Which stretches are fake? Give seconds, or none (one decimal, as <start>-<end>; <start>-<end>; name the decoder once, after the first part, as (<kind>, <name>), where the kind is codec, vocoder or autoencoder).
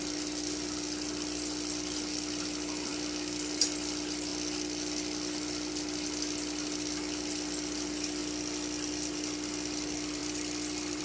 none